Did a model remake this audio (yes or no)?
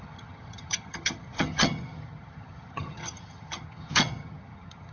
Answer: yes